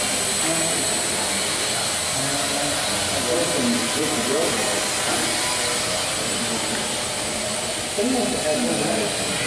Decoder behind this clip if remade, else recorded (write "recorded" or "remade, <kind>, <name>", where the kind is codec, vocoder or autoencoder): recorded